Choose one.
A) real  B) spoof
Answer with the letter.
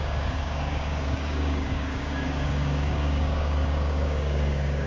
B